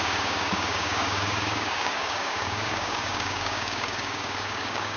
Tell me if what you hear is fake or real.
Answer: fake